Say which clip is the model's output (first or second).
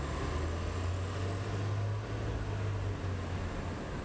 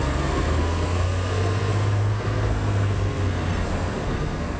second